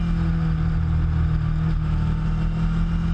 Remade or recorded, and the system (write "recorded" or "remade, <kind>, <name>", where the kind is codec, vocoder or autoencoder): recorded